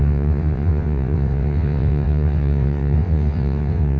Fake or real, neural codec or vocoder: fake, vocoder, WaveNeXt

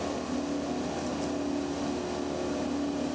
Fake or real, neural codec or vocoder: real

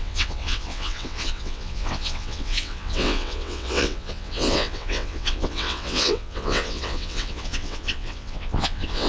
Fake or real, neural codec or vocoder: fake, vocoder, WaveNeXt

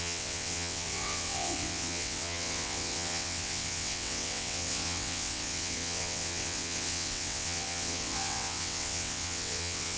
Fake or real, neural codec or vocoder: fake, vocoder, WaveNeXt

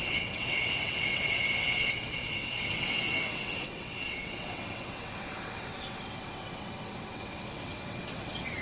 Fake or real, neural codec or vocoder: fake, vocoder, WaveNeXt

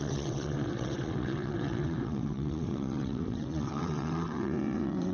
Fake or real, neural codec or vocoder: fake, vocoder, WaveNeXt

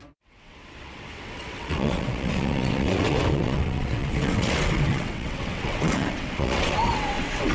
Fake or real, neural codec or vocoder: fake, vocoder, WaveNeXt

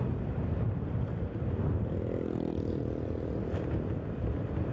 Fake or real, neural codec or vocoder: real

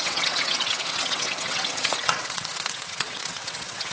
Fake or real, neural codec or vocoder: fake, vocoder, WaveNeXt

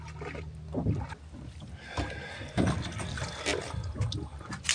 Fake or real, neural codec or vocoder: real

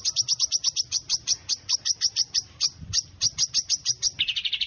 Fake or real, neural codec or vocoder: real